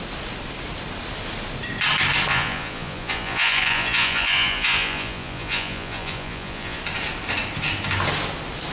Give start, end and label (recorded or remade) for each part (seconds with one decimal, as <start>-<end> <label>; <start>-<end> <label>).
0.0-2.3 recorded; 2.3-6.8 remade; 6.8-8.7 recorded